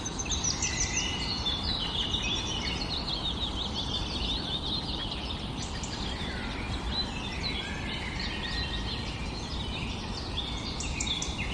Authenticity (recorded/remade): remade